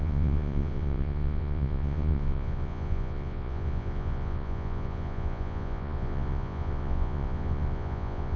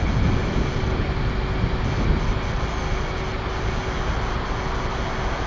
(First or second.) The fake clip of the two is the first